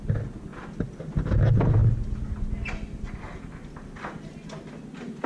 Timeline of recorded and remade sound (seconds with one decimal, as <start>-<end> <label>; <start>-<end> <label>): 0.0-5.3 recorded